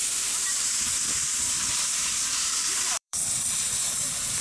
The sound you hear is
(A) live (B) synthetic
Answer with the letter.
B